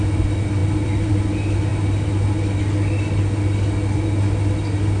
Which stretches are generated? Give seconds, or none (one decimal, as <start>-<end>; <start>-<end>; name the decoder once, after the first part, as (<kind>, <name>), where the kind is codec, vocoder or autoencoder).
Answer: none